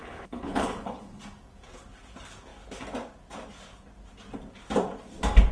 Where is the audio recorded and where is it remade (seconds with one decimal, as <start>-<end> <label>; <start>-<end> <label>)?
0.0-1.2 remade; 1.2-5.5 recorded